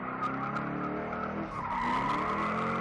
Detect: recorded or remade recorded